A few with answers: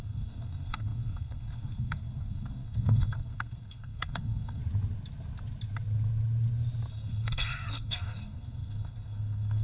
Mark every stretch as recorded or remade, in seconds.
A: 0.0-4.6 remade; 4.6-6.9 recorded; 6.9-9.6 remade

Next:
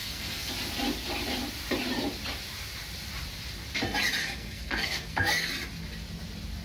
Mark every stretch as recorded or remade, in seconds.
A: 0.0-0.5 remade; 0.5-4.2 recorded; 4.2-5.5 remade; 5.5-6.6 recorded

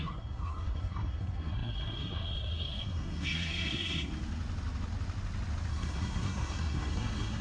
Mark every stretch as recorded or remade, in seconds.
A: 0.0-4.1 remade; 4.1-5.7 recorded; 5.7-7.4 remade